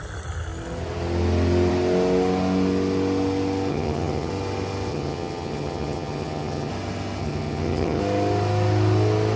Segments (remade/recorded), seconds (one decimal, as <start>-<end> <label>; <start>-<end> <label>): 0.0-3.7 recorded; 3.7-4.3 remade; 4.3-4.9 recorded; 4.9-6.7 remade; 6.7-7.2 recorded; 7.2-8.0 remade; 8.0-9.4 recorded